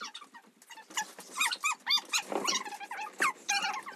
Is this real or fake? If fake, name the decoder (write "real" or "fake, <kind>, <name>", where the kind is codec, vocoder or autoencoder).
real